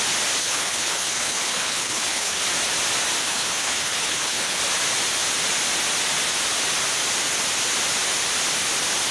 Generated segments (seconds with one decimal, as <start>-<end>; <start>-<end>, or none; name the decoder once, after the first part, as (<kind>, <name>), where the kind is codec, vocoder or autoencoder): 0.4-2.4 (codec, HILCodec); 3.2-4.6